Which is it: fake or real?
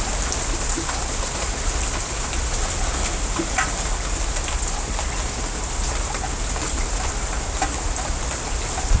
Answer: real